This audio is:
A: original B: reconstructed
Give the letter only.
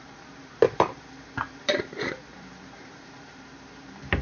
B